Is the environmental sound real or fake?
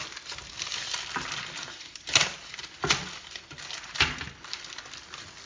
real